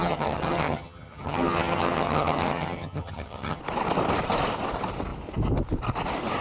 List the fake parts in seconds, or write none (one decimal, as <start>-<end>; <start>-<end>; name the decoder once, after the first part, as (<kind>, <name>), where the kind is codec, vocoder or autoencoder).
0.0-3.6 (vocoder, HiFi-GAN)